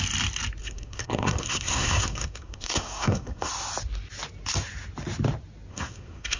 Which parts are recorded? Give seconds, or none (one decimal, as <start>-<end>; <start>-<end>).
0.0-0.6; 3.5-5.7